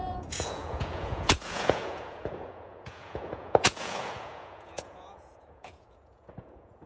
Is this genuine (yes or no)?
no